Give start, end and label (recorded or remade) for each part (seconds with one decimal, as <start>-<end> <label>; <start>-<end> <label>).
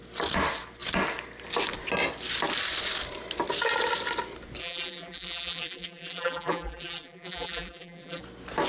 0.0-4.6 recorded; 4.6-8.2 remade; 8.2-8.7 recorded